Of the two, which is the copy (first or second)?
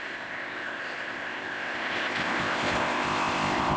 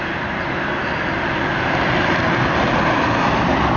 first